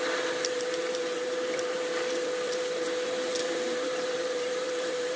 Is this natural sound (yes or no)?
no